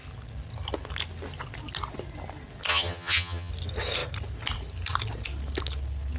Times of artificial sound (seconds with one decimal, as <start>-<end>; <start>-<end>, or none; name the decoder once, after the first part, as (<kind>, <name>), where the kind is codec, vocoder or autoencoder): 2.7-3.5 (vocoder, HiFi-GAN)